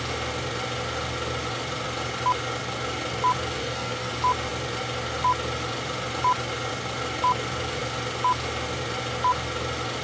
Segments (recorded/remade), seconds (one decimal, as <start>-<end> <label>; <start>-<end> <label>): 0.0-3.6 recorded; 3.6-4.1 remade; 4.1-10.0 recorded